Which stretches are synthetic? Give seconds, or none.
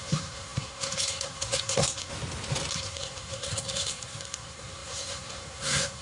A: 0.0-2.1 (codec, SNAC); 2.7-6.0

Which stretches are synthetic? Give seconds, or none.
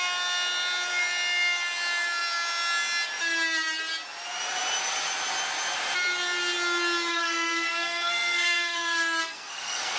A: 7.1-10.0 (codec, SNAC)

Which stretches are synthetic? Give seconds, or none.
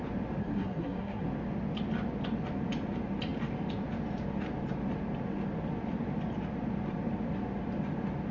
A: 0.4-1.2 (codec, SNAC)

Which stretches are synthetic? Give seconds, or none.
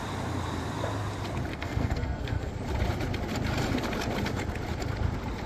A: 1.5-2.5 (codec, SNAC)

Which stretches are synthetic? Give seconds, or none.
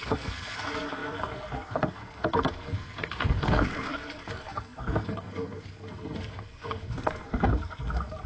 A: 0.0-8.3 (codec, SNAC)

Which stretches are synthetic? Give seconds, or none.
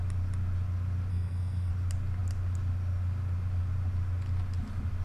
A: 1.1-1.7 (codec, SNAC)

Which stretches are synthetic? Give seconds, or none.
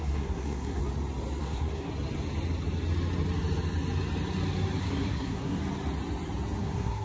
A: 0.0-0.8 (codec, SNAC); 1.4-1.9; 4.8-5.6; 6.6-7.0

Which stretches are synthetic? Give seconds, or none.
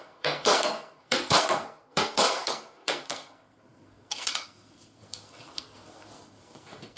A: 0.0-7.0 (codec, SNAC)